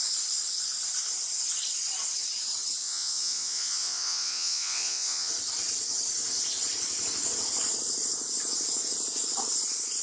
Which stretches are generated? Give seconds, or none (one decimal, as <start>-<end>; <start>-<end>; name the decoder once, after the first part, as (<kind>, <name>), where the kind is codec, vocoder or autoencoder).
2.8-5.3 (vocoder, Vocos)